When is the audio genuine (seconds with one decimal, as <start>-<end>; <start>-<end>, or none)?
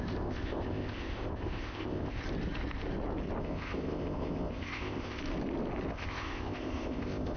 2.2-3.4; 5.2-5.9